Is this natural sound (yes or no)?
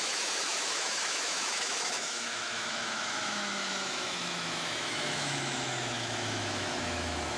no